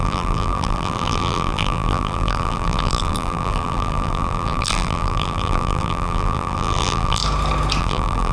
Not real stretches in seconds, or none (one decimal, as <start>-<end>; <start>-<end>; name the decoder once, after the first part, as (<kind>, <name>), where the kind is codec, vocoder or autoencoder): 0.0-7.2 (vocoder, BigVGAN v2); 7.8-8.3